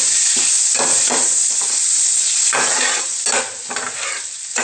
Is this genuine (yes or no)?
yes